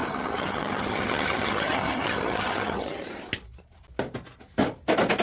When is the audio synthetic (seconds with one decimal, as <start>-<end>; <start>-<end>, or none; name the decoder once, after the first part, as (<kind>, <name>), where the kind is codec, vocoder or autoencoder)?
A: 0.0-3.1 (vocoder, HiFi-GAN)